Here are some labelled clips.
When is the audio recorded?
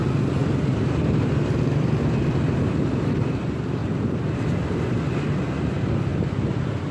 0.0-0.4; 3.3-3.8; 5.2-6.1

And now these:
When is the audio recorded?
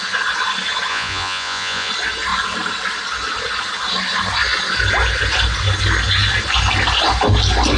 0.0-0.9; 1.9-7.8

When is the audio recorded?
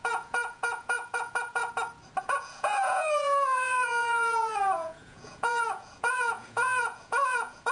1.6-2.2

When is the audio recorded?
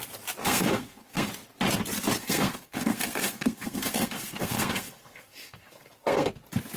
0.0-0.4; 1.3-2.2; 6.3-6.8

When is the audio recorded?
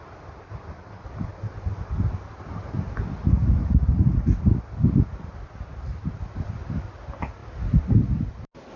0.0-8.8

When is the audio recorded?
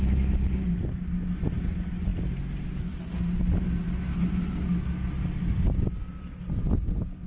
0.0-7.3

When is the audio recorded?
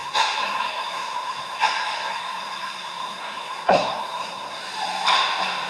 4.6-5.7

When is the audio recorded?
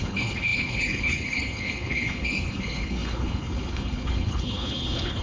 none